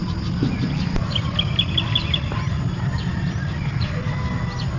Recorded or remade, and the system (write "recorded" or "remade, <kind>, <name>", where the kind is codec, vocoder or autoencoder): recorded